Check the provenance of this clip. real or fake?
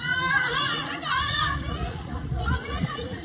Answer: fake